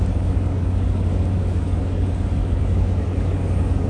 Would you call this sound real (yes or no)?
no